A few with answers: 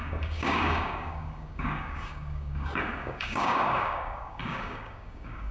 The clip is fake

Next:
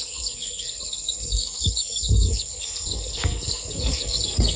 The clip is fake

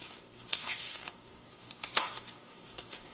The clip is fake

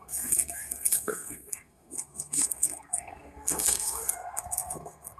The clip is fake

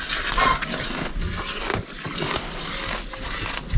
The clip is real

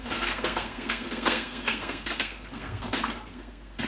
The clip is fake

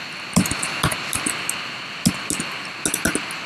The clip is real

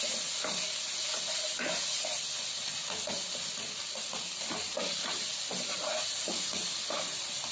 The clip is real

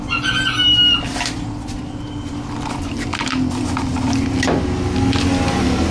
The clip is real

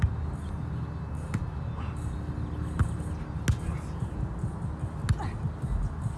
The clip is real